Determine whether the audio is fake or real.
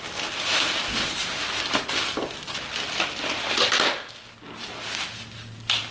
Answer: real